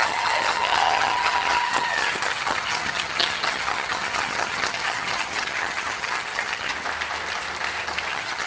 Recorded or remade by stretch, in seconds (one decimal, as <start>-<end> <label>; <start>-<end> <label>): 0.0-6.7 remade; 6.7-8.1 recorded; 8.1-8.5 remade